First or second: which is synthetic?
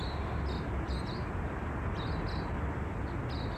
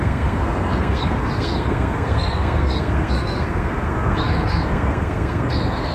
second